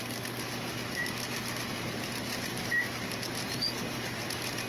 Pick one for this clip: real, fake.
real